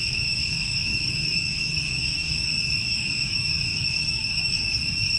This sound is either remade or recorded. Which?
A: remade